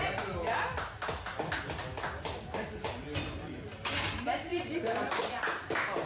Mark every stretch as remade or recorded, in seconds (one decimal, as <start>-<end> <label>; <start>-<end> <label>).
0.0-6.1 recorded